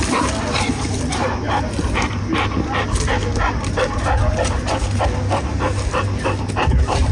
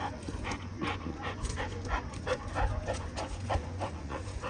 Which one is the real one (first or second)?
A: first